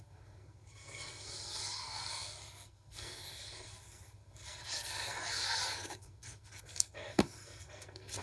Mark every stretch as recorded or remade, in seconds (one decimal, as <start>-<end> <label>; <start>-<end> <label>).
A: 0.0-8.2 remade